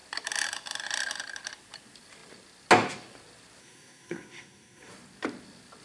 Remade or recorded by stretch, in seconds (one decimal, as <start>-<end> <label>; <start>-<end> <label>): 0.0-3.6 recorded; 3.6-4.9 remade; 4.9-5.8 recorded

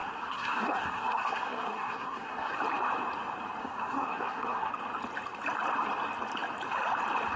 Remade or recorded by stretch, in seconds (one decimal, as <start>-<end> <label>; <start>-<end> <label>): 0.0-2.5 remade; 2.5-3.6 recorded; 3.6-4.7 remade; 4.7-7.4 recorded

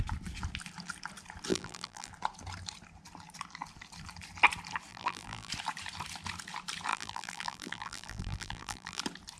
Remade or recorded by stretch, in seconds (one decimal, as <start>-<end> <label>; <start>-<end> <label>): 0.0-1.5 recorded; 1.5-2.1 remade; 2.1-4.9 recorded; 4.9-5.5 remade; 5.5-6.9 recorded; 6.9-9.0 remade; 9.0-9.4 recorded

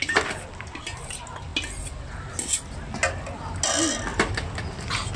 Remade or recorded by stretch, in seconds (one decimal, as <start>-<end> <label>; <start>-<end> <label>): 0.0-5.2 recorded

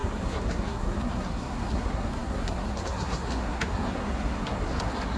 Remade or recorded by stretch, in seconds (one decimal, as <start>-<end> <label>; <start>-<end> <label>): 0.0-5.2 remade

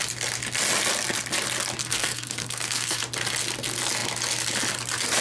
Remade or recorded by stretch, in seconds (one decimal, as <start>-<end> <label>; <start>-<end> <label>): 0.0-1.8 recorded; 1.8-3.0 remade; 3.0-5.2 recorded

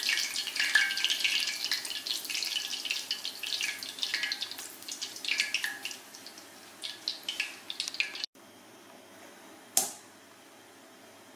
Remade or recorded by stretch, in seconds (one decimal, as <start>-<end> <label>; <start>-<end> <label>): 0.0-11.4 recorded